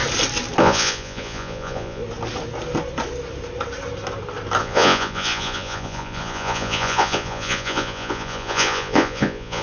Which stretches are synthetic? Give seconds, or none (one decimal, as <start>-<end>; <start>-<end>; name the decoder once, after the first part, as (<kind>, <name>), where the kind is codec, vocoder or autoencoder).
0.6-2.0 (vocoder, Vocos); 4.6-9.6